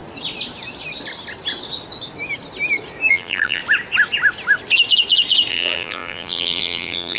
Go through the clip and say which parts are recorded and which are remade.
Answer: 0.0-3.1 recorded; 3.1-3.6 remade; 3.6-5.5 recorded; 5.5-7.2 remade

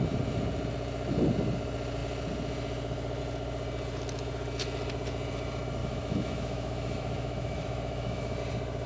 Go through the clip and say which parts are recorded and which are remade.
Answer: 0.0-5.8 recorded; 5.8-8.4 remade; 8.4-8.9 recorded

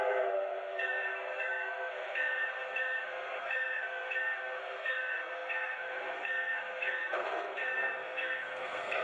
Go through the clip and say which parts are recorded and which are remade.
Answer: 0.0-9.0 remade